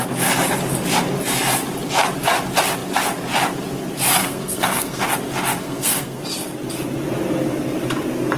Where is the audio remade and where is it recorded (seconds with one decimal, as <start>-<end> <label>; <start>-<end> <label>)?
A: 0.0-4.2 recorded; 4.2-5.0 remade; 5.0-5.6 recorded; 5.6-6.2 remade; 6.2-8.4 recorded